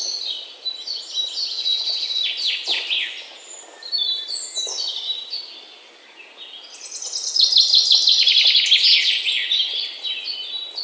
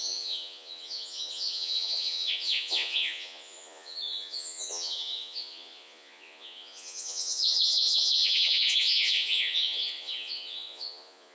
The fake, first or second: second